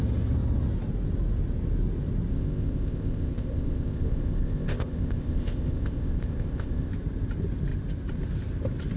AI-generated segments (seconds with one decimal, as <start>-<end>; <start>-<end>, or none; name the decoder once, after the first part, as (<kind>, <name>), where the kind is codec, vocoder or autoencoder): 2.3-6.9 (codec, ZipCodec)